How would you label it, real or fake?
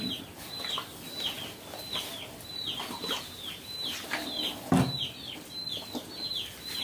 real